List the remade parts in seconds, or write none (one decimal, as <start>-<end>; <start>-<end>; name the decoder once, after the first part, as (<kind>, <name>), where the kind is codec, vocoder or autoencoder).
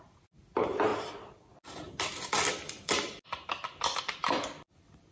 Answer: none